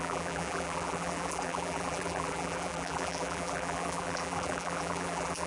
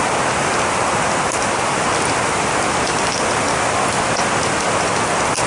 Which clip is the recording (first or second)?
second